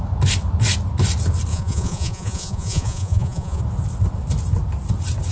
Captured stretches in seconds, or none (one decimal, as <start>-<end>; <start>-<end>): 0.0-1.5; 3.6-5.3